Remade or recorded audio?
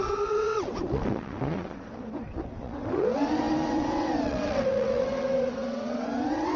remade